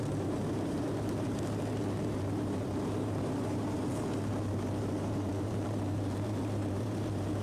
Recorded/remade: remade